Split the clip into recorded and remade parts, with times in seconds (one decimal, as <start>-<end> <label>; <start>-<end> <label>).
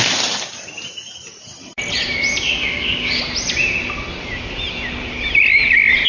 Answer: 0.0-2.6 recorded; 2.6-3.2 remade; 3.2-6.1 recorded